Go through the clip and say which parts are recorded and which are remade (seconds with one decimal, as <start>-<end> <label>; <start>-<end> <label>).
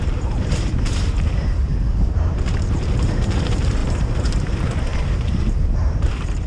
0.0-1.7 remade; 1.7-2.3 recorded; 2.3-6.5 remade